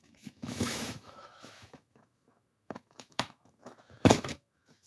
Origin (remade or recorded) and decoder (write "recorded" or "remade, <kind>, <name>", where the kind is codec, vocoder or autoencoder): remade, autoencoder, DAC-VAE